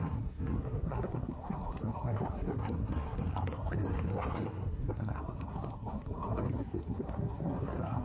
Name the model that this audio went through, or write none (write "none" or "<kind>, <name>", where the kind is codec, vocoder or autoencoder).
codec, SNAC